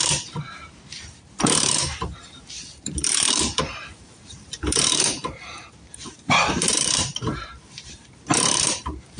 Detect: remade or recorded remade